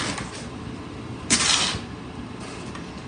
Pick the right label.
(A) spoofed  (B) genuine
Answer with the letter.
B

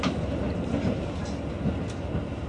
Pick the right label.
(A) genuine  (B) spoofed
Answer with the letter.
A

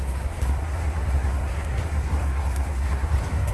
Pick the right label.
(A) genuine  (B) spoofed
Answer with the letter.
B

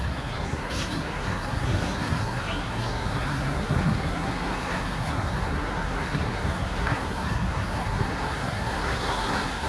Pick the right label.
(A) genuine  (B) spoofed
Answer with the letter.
B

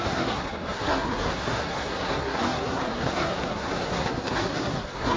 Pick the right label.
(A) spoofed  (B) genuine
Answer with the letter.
A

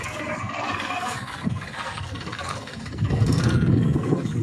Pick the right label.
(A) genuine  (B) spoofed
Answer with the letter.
B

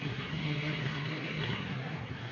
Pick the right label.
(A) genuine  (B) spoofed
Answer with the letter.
B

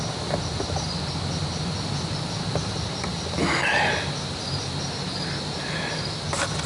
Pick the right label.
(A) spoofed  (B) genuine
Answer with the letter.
B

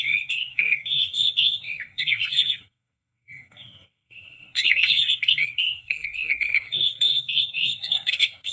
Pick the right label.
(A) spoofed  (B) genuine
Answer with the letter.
A